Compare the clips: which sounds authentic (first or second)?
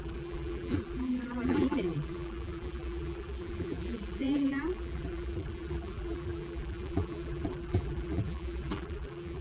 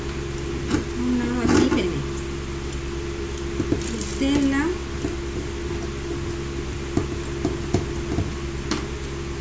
second